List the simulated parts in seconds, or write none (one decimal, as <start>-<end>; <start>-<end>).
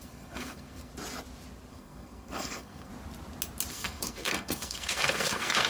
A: 0.0-0.9; 1.7-2.9; 3.7-5.7